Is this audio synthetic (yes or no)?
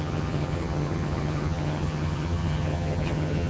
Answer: yes